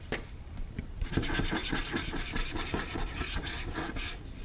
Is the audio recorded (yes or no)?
no